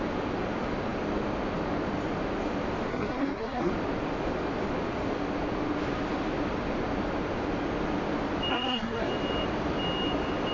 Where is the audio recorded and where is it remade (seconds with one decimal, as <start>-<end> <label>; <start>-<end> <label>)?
0.0-2.9 recorded; 2.9-3.7 remade; 3.7-8.5 recorded; 8.5-9.1 remade; 9.1-10.5 recorded